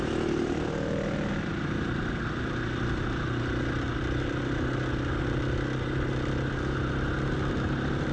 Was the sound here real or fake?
real